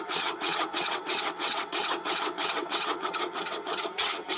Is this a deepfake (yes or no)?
yes